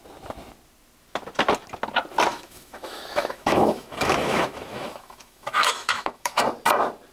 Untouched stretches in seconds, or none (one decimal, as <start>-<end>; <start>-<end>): 0.0-2.3; 6.4-7.1